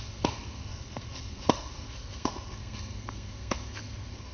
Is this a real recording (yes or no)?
no